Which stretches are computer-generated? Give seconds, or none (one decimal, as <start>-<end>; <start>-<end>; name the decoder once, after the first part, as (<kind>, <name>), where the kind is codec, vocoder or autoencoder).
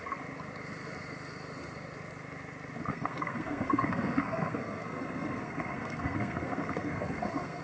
2.9-7.6 (codec, SNAC)